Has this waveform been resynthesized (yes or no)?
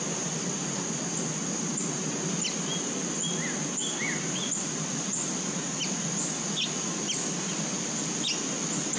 no